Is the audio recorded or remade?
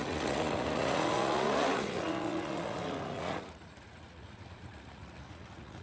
remade